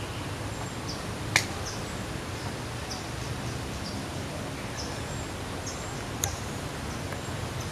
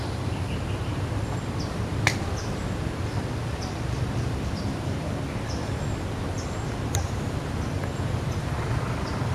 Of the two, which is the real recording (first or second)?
first